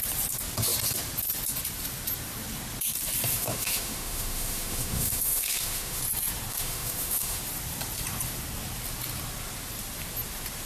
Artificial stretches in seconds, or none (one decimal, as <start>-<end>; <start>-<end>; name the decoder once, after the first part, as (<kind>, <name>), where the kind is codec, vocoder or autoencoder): 3.3-6.0 (autoencoder, DAC-VAE); 6.5-7.4